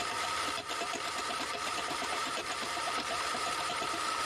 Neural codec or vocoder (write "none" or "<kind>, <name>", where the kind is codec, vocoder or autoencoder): vocoder, BigVGAN v2